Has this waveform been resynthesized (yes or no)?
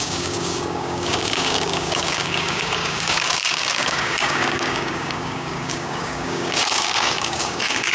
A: yes